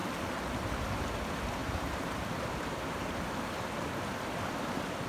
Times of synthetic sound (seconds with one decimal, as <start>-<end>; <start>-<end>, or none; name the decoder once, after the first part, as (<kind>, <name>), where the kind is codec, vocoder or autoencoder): 1.6-5.1 (vocoder, BigVGAN v2)